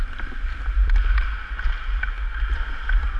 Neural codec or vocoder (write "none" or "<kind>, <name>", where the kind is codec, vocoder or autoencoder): none